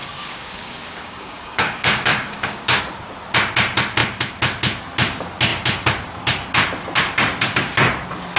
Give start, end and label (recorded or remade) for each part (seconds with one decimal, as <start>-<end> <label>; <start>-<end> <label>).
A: 0.0-2.8 remade; 2.8-8.4 recorded